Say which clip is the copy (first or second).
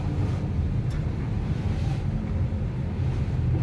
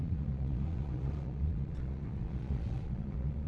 second